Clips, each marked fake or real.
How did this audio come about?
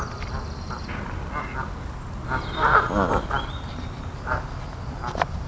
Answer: real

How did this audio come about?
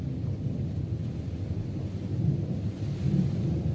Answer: real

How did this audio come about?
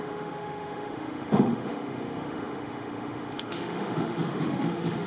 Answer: fake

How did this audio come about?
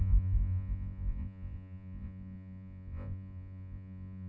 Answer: fake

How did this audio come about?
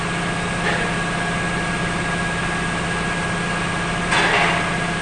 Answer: real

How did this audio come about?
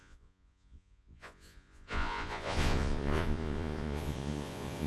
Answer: fake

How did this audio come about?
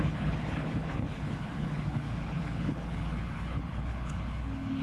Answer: fake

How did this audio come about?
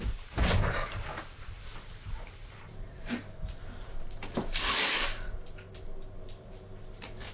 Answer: fake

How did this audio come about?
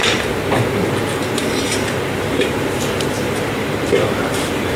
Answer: fake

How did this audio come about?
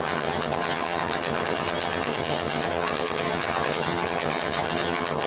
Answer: fake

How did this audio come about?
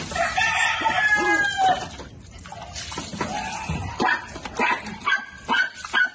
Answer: real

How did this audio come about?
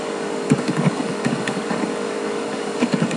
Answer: fake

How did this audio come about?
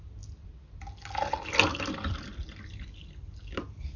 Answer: real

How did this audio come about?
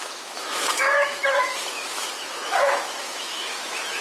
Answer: fake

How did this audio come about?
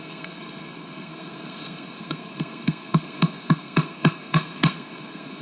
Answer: fake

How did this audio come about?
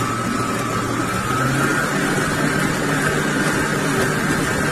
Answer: real